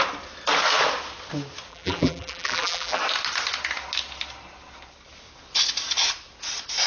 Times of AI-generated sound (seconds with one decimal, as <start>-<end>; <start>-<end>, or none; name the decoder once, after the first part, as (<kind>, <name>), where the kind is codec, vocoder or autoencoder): 1.7-3.0 (vocoder, BigVGAN v2)